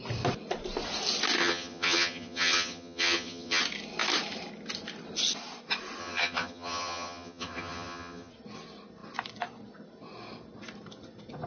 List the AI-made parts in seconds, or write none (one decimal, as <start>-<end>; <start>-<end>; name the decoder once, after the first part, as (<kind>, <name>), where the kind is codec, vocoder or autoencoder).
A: 1.4-3.6 (vocoder, HiFi-GAN); 6.0-8.3